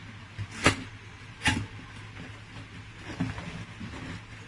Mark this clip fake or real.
real